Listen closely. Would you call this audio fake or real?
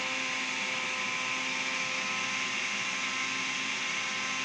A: real